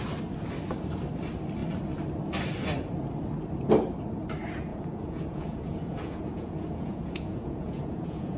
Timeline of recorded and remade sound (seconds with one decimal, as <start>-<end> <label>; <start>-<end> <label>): 0.0-4.7 recorded; 4.7-8.4 remade